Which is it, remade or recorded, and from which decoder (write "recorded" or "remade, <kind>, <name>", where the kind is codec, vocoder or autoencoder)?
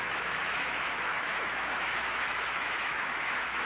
remade, autoencoder, DAC-VAE